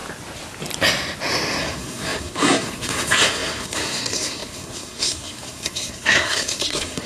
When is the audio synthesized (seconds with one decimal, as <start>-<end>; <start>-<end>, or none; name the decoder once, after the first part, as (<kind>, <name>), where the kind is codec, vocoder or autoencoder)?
1.6-7.1 (codec, SNAC)